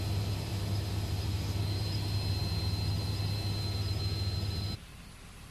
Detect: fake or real real